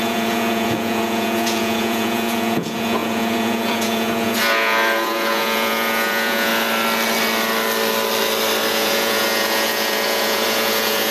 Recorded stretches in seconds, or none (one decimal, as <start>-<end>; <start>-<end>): 6.5-8.7